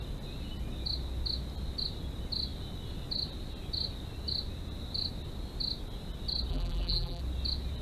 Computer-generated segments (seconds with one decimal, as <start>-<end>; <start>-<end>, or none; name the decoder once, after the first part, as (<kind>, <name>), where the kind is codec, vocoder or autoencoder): 6.5-7.2 (vocoder, BigVGAN v2)